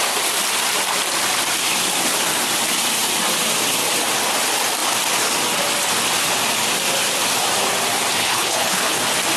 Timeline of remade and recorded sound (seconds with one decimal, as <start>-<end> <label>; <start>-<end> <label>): 0.0-8.2 recorded; 8.2-9.0 remade; 9.0-9.4 recorded